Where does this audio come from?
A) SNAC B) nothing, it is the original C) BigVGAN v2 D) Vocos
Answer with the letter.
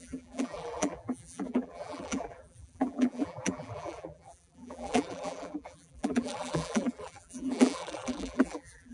C